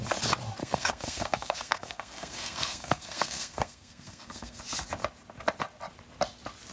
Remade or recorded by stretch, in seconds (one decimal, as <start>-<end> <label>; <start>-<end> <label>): 0.0-0.6 recorded; 0.6-4.6 remade; 4.6-6.7 recorded